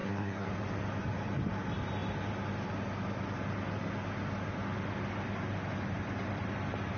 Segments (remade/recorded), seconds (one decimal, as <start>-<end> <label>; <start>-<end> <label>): 0.0-0.5 remade; 0.5-7.0 recorded